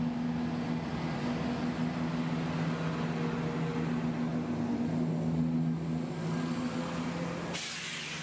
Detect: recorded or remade recorded